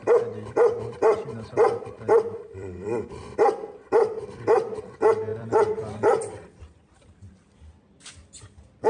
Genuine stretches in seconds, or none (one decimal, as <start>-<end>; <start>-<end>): 0.0-1.0; 4.8-5.3; 7.3-8.9